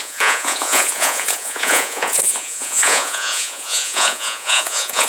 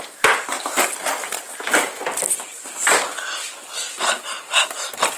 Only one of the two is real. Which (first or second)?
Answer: second